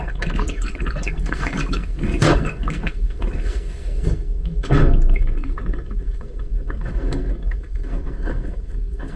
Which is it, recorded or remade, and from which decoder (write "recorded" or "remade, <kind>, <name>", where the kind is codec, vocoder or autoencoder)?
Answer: remade, codec, SNAC